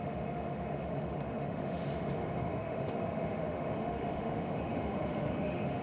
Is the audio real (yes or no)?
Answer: no